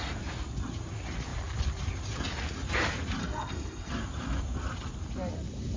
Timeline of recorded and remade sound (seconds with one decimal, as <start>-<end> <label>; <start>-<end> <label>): 0.0-3.2 recorded; 3.2-3.9 remade; 3.9-5.8 recorded